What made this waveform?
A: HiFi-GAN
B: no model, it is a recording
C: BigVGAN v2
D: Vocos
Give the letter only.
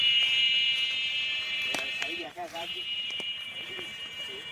C